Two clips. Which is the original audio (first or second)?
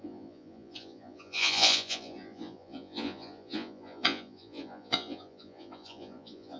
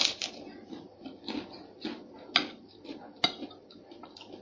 second